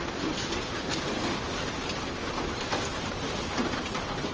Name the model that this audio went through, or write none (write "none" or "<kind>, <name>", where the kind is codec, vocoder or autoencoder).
none